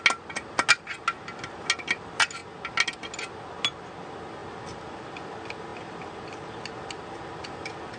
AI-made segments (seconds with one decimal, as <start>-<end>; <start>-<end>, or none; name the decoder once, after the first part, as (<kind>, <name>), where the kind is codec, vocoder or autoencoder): none